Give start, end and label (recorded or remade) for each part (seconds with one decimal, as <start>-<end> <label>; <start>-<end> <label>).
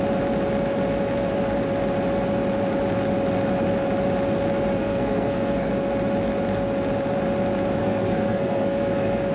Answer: 0.0-4.8 recorded; 4.8-5.7 remade; 5.7-7.8 recorded; 7.8-9.3 remade